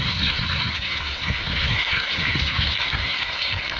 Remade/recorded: remade